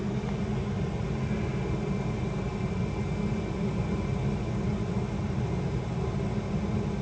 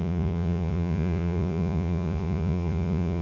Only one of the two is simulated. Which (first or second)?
second